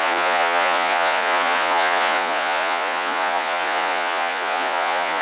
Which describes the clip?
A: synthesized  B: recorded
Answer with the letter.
A